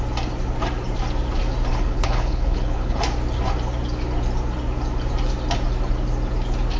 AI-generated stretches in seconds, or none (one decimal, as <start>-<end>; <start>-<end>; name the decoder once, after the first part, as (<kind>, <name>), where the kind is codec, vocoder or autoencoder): 1.7-3.0 (codec, HILCodec)